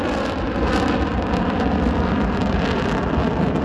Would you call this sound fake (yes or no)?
yes